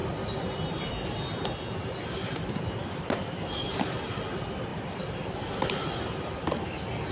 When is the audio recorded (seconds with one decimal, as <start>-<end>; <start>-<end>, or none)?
0.9-4.7; 6.0-7.1